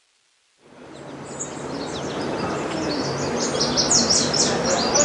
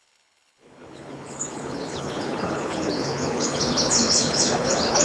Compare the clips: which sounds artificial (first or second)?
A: second